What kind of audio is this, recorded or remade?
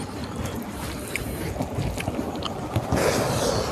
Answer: recorded